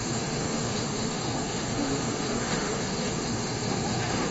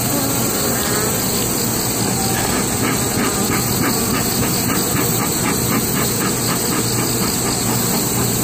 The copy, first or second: first